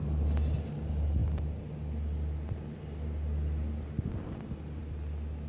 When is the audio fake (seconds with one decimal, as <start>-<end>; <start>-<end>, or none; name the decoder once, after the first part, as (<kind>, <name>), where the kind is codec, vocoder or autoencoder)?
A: none